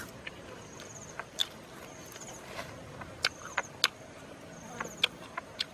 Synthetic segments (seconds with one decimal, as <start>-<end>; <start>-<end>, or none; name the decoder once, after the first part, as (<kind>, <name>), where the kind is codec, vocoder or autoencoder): none